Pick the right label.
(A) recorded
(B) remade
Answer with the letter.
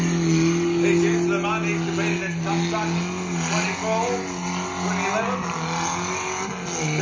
A